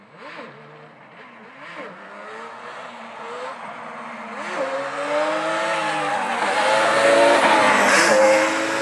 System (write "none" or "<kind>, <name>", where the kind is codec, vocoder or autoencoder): none